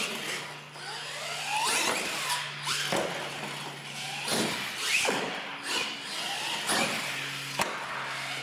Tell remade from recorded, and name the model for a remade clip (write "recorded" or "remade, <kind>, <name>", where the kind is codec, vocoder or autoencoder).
recorded